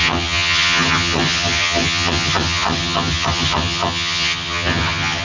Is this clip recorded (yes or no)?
no